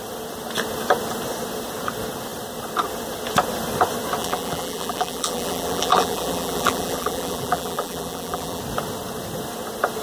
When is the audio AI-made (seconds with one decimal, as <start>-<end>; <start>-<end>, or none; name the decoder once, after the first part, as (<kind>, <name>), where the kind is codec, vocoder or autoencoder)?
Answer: 4.2-8.6 (vocoder, BigVGAN v2)